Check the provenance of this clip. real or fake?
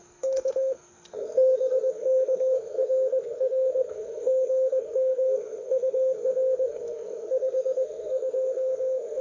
fake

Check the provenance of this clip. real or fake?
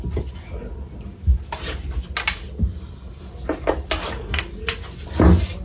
real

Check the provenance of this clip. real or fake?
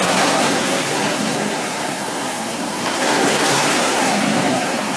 fake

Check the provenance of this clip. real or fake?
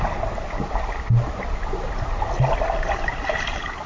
real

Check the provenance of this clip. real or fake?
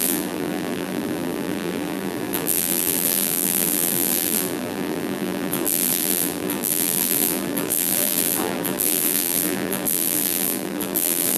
fake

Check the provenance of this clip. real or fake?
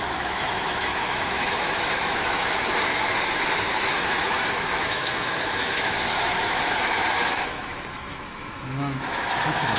fake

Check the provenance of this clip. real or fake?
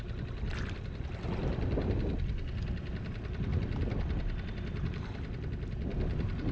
real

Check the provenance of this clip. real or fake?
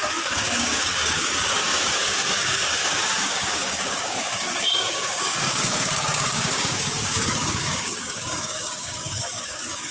fake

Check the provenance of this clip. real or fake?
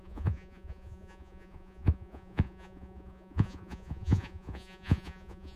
fake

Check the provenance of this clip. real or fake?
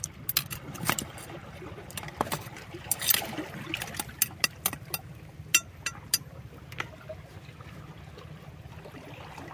real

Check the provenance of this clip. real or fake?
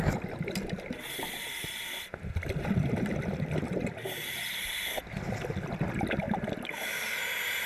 real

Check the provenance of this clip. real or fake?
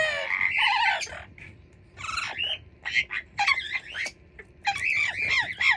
real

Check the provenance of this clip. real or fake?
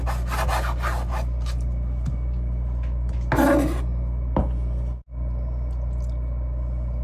real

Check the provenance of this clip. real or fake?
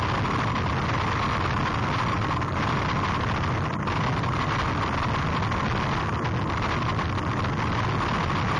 real